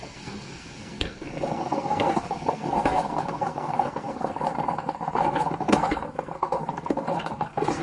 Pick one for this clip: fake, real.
fake